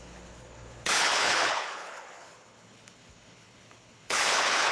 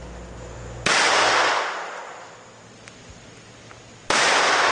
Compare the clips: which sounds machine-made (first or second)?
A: first